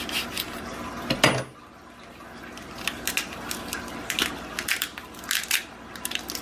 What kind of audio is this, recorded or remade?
recorded